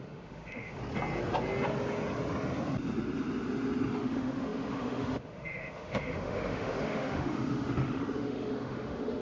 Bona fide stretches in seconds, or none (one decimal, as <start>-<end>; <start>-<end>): 0.8-4.0